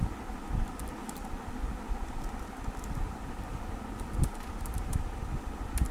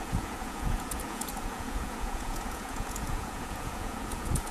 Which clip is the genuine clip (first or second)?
first